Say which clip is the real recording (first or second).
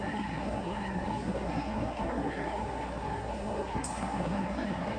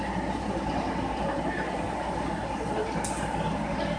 second